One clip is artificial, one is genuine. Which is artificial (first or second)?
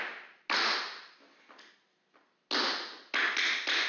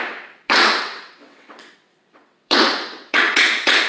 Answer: second